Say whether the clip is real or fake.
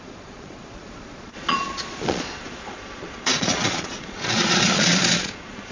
fake